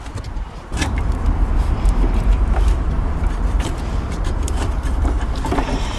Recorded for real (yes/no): no